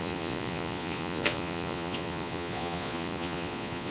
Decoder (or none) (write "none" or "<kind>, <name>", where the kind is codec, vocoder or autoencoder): vocoder, Vocos